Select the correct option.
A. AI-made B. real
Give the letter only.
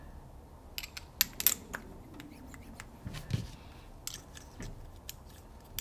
B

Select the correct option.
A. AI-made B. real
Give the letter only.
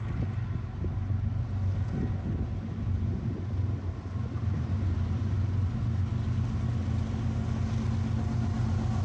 B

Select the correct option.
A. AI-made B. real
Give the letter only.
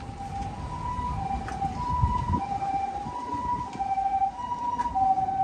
B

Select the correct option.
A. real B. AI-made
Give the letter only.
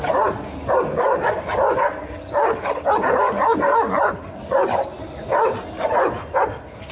A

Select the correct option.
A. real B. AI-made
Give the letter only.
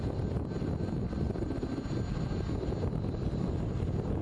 A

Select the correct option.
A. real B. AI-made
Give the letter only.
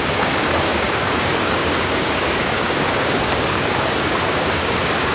B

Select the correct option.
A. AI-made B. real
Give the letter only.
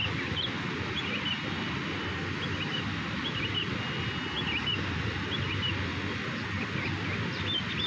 B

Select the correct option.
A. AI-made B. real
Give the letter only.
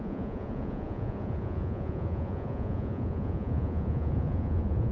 A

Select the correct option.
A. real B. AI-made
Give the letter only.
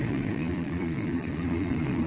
B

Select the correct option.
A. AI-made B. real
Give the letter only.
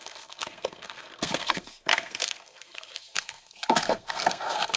A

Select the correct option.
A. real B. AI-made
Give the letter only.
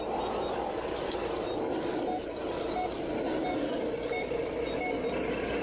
A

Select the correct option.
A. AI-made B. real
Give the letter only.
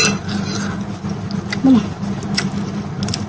B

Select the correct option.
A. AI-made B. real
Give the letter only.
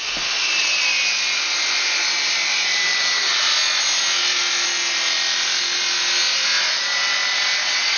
B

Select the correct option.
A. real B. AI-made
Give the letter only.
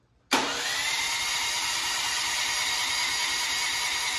A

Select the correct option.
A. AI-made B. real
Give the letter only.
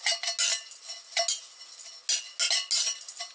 B